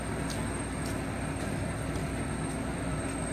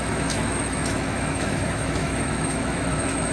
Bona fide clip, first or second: first